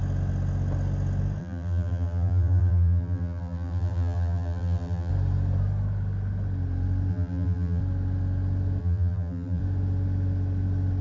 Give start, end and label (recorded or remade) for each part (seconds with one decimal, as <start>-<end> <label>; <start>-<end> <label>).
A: 0.0-1.4 recorded; 1.4-5.1 remade; 5.1-7.1 recorded; 7.1-7.8 remade; 7.8-8.8 recorded; 8.8-9.6 remade; 9.6-11.0 recorded